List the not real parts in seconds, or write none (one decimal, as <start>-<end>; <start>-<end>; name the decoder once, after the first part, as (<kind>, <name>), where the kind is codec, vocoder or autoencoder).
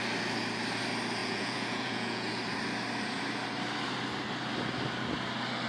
1.2-2.4 (vocoder, Vocos)